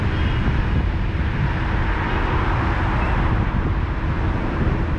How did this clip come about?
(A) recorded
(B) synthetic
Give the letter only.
A